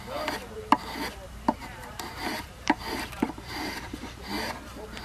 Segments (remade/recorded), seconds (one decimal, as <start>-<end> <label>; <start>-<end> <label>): 0.0-1.6 recorded; 1.6-3.7 remade; 3.7-5.0 recorded

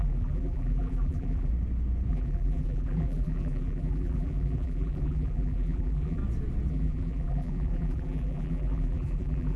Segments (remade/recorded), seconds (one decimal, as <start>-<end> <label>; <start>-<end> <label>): 0.0-1.5 remade; 1.5-2.1 recorded; 2.1-6.2 remade; 6.2-6.7 recorded; 6.7-9.6 remade

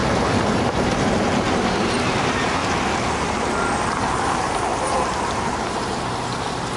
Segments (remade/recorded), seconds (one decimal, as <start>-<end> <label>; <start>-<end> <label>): 0.0-2.6 remade; 2.6-4.0 recorded; 4.0-6.8 remade

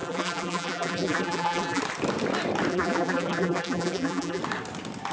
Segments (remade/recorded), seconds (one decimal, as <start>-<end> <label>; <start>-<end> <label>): 0.0-1.8 remade; 1.8-2.7 recorded; 2.7-4.4 remade; 4.4-5.1 recorded

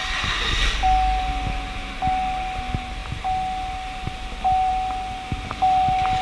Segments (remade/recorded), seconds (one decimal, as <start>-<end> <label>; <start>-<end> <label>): 0.0-6.2 recorded

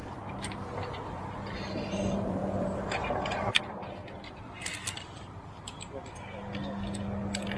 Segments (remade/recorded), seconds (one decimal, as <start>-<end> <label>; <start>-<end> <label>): 0.0-4.0 remade; 4.0-7.6 recorded

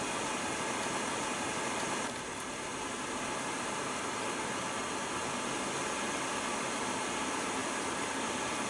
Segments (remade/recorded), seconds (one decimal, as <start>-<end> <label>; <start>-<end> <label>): 0.0-2.7 recorded; 2.7-3.9 remade; 3.9-7.6 recorded; 7.6-8.2 remade; 8.2-8.7 recorded

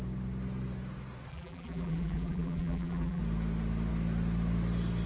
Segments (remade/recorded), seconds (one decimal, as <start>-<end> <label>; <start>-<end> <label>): 0.0-1.3 recorded; 1.3-3.2 remade; 3.2-5.1 recorded